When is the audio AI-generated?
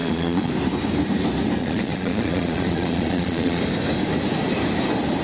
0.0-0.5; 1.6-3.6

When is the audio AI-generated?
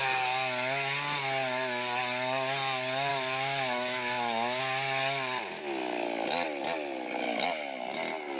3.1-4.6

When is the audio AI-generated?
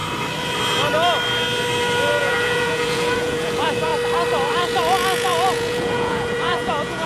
2.2-3.9; 4.5-7.1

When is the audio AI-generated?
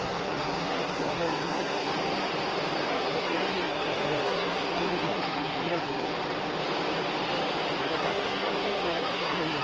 0.0-1.9; 2.9-6.1; 7.8-9.6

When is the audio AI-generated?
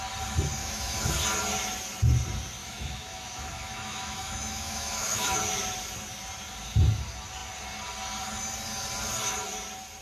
0.6-1.1; 2.6-5.4